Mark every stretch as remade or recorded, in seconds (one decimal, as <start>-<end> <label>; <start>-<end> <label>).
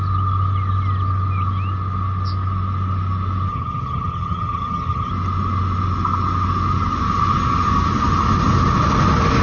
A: 0.0-3.5 recorded; 3.5-5.1 remade; 5.1-9.4 recorded